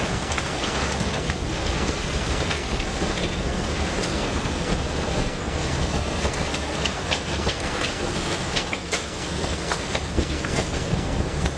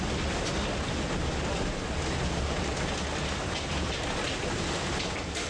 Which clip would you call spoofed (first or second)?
first